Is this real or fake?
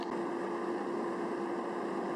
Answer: real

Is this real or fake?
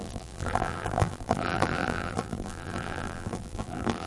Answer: fake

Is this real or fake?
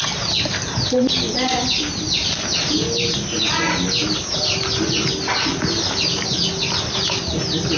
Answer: real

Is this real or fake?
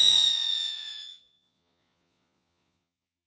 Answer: fake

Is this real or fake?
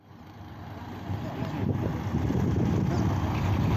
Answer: real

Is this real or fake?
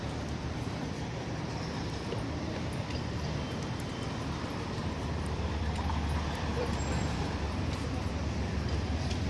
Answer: fake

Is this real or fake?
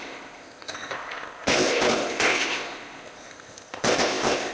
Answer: fake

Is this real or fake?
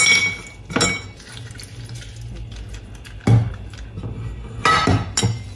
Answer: real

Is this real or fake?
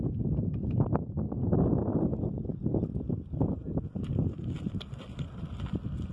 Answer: real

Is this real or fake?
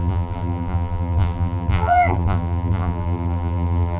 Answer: fake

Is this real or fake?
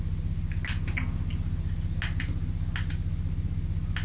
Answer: real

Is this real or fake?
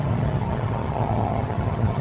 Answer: fake